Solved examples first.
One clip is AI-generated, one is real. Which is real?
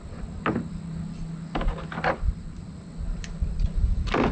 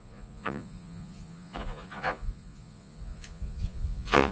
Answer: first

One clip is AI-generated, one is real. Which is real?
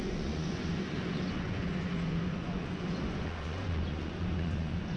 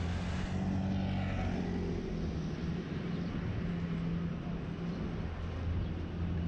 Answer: second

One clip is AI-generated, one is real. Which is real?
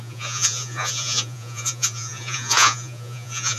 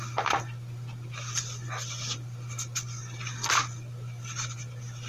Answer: second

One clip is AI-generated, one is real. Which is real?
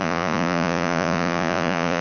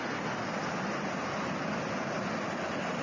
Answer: second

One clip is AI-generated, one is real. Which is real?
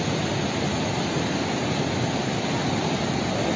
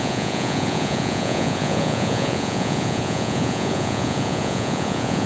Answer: first